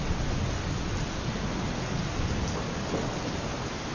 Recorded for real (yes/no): yes